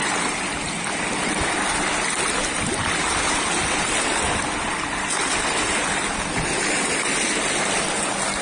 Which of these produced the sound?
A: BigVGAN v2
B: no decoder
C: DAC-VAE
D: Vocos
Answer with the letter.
B